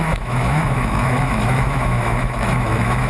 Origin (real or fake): fake